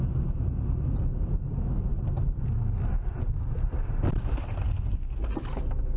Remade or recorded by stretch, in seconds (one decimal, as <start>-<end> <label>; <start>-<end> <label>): 0.0-6.0 recorded